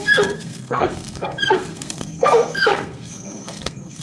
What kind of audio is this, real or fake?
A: fake